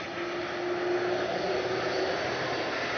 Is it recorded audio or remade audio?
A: recorded